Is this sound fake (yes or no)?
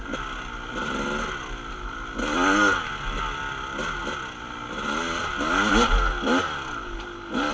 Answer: no